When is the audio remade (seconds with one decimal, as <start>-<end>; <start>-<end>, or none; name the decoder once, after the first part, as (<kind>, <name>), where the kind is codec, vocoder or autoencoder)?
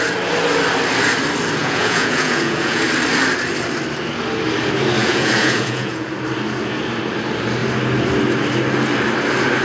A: 1.6-2.8 (vocoder, Vocos); 5.0-6.1